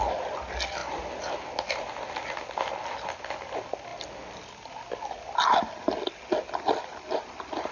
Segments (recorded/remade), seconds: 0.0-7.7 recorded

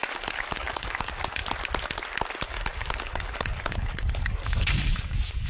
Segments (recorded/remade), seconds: 0.0-1.4 remade; 1.4-2.4 recorded; 2.4-5.5 remade

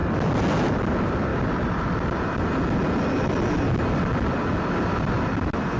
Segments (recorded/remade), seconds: 0.0-5.8 recorded

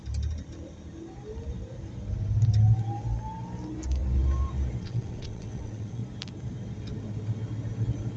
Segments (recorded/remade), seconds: 0.0-4.8 recorded; 4.8-6.0 remade; 6.0-8.2 recorded

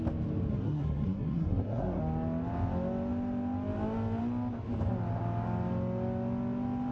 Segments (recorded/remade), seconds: 0.0-0.5 recorded; 0.5-2.0 remade; 2.0-6.9 recorded

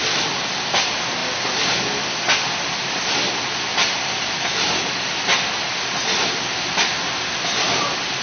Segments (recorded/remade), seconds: 0.0-8.2 recorded